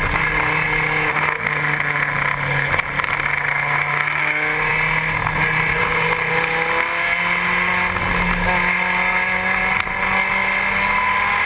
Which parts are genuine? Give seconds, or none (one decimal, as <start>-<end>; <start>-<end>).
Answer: 0.0-11.5